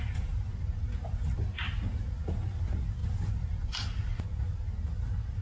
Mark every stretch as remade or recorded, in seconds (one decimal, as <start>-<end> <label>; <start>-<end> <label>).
0.0-5.4 recorded